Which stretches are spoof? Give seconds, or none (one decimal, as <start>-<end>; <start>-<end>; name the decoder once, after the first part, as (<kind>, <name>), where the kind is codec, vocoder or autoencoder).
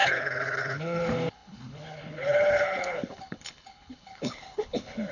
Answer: 0.0-5.1 (codec, HILCodec)